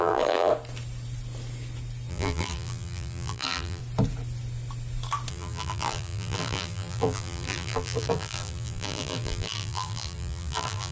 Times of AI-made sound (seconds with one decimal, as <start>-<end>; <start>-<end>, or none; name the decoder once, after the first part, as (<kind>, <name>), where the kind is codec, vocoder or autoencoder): 0.0-0.5 (vocoder, BigVGAN v2); 2.1-3.8; 5.3-10.9